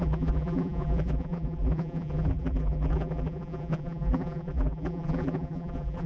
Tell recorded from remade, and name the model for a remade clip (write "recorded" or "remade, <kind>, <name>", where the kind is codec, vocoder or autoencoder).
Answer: remade, vocoder, BigVGAN v2